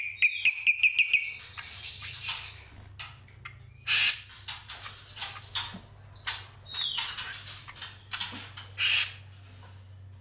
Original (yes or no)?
yes